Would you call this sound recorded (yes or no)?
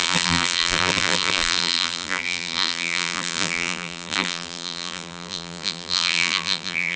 no